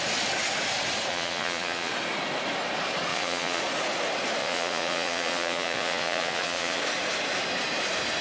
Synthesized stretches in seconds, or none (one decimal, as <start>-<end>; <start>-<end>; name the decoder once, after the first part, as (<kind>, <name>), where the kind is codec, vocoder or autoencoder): 1.1-1.9 (vocoder, Vocos); 3.1-3.6; 4.4-6.8